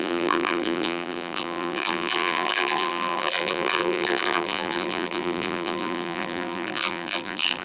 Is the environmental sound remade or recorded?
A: remade